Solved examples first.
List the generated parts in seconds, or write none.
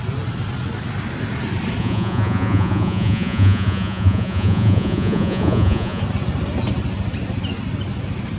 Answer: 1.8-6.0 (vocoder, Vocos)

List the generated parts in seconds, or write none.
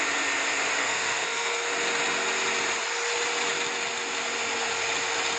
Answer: 0.8-1.7 (codec, SNAC)